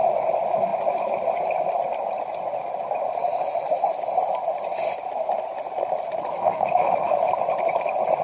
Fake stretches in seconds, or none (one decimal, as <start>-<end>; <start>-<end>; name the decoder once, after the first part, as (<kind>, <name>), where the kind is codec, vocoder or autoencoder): 6.3-7.3 (autoencoder, DAC-VAE)